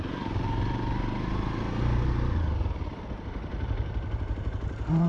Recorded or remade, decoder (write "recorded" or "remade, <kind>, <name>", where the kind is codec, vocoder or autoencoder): remade, vocoder, BigVGAN v2